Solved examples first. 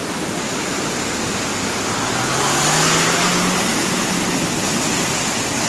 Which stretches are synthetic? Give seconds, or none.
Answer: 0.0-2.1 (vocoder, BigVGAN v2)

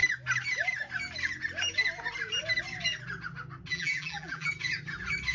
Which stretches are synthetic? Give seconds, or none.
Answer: 3.7-4.5 (vocoder, BigVGAN v2)

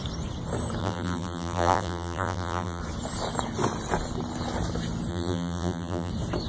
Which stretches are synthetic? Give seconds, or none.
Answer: 0.8-2.8 (vocoder, BigVGAN v2); 5.1-6.1

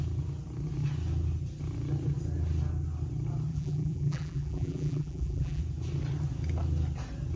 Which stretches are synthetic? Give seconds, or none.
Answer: 3.5-5.6 (vocoder, BigVGAN v2)

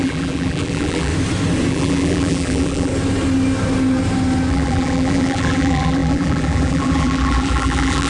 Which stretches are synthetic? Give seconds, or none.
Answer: 0.0-1.1 (vocoder, BigVGAN v2); 1.7-2.9; 4.5-8.1

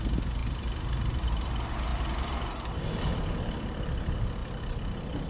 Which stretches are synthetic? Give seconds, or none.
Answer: 0.4-1.5 (vocoder, BigVGAN v2)